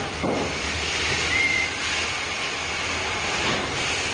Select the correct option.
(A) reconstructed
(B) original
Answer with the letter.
B